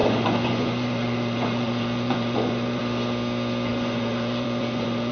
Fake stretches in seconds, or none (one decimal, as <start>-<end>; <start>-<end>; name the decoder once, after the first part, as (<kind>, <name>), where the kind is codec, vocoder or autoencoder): 0.0-2.8 (vocoder, Vocos); 3.7-5.1